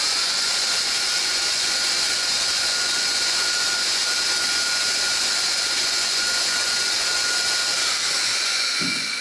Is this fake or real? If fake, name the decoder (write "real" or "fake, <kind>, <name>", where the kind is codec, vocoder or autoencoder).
fake, vocoder, Vocos